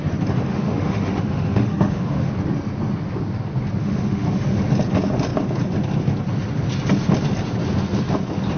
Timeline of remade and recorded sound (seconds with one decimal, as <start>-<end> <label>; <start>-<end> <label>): 0.0-0.5 recorded; 0.5-2.3 remade; 2.3-3.8 recorded; 3.8-4.6 remade; 4.6-8.6 recorded